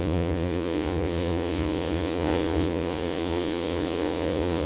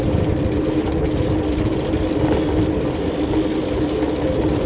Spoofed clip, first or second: first